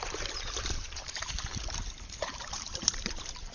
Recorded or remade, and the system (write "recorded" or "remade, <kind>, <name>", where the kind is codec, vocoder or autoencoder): remade, vocoder, BigVGAN v2